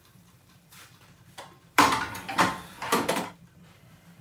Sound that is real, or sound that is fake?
fake